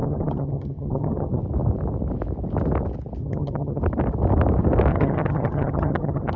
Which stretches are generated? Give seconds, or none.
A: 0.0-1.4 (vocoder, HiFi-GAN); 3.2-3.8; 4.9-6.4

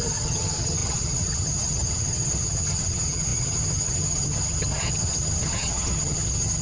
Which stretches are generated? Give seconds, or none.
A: 0.0-6.6 (vocoder, HiFi-GAN)